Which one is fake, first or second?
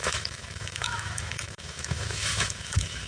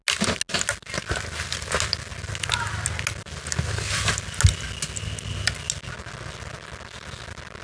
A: first